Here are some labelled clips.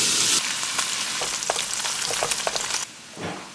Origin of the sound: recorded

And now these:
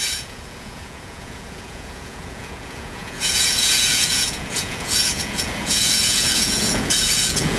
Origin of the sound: remade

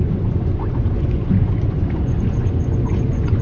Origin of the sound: remade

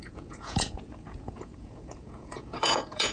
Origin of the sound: remade